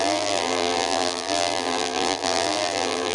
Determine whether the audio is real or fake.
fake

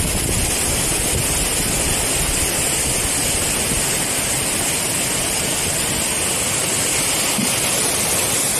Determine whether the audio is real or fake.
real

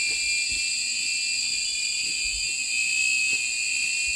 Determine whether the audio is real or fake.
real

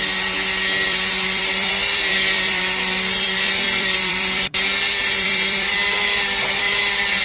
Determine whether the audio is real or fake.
fake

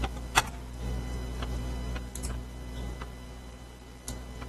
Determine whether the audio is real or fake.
real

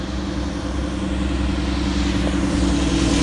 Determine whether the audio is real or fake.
real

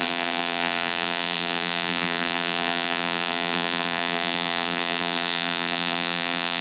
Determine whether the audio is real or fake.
fake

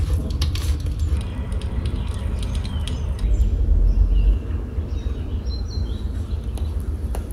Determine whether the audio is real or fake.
real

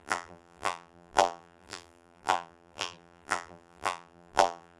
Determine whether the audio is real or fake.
fake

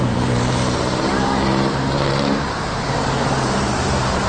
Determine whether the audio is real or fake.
fake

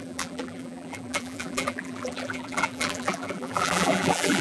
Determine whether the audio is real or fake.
fake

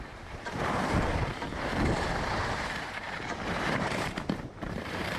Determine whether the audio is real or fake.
fake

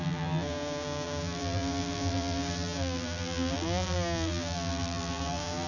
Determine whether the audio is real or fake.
fake